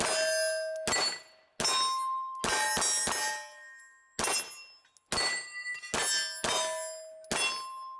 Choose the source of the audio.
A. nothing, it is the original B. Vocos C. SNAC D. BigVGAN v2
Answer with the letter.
A